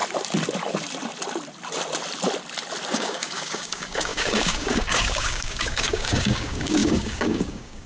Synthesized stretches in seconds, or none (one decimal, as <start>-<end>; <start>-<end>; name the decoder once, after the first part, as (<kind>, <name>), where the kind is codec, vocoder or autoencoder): 2.9-7.9 (codec, DAC)